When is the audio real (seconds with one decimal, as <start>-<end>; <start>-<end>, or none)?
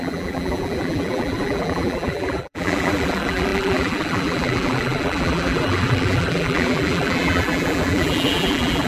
none